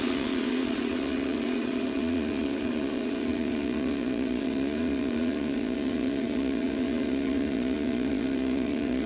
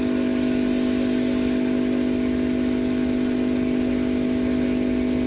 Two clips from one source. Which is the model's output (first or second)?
first